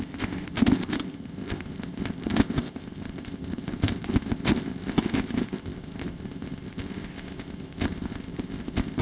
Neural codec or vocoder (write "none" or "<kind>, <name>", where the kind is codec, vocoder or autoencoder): codec, ZipCodec